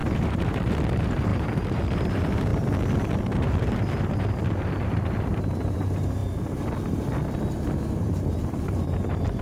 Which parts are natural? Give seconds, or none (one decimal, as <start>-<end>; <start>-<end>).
2.5-3.2; 6.2-8.0